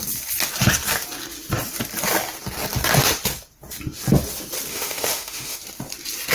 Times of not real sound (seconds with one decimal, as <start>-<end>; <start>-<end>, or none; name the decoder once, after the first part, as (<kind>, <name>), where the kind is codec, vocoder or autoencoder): 4.7-5.6 (autoencoder, DAC-VAE)